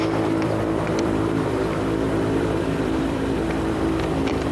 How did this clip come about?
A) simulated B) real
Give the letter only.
A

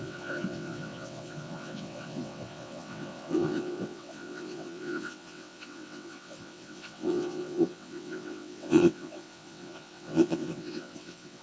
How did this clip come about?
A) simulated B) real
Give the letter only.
A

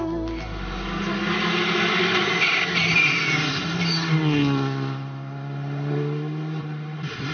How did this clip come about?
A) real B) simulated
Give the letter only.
A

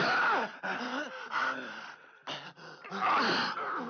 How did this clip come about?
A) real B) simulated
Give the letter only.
A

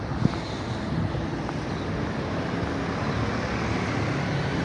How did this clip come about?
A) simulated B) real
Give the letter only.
B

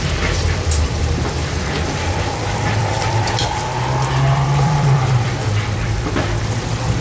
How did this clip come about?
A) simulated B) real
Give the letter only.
A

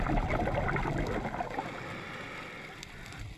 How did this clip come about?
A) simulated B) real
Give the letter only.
B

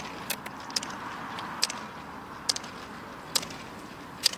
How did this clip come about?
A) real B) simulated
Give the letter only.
B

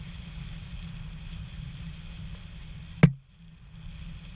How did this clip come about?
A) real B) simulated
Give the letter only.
A